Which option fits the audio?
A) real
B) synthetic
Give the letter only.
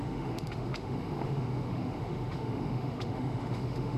B